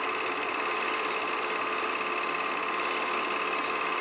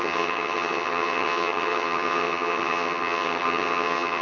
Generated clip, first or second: second